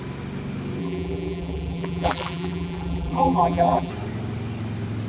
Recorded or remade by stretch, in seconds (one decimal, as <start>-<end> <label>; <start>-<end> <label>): 0.0-0.8 recorded; 0.8-3.9 remade; 3.9-5.1 recorded